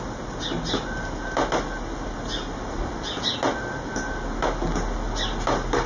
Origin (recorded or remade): recorded